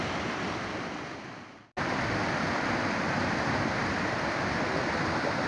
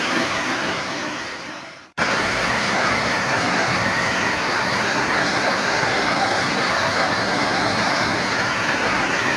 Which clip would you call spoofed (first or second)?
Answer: second